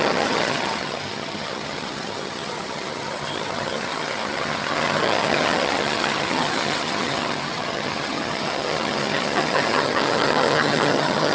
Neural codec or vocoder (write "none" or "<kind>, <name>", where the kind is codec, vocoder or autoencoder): vocoder, HiFi-GAN